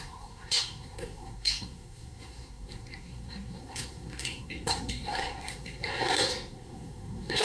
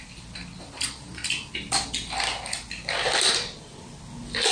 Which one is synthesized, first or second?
first